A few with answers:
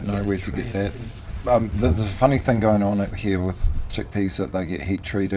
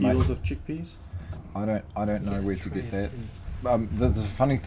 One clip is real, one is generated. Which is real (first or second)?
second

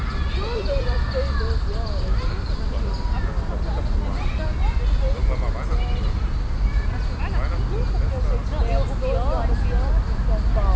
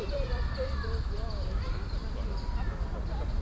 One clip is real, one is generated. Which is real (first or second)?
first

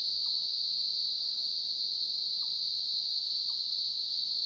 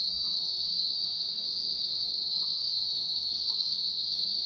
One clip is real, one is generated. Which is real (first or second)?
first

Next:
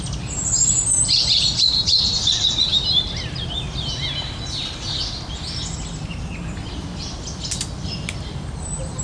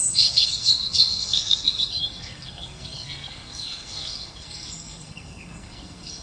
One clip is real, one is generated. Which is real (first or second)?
first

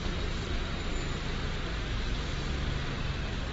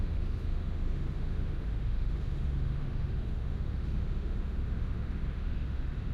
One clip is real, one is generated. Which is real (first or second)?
first